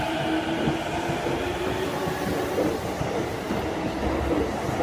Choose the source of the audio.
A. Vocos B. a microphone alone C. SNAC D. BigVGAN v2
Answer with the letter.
D